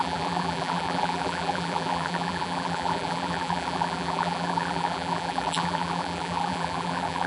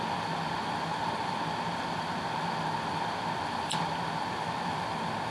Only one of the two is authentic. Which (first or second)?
second